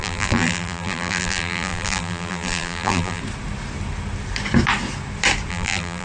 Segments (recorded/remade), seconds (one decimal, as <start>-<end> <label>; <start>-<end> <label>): 0.0-3.2 remade; 3.2-5.5 recorded; 5.5-6.0 remade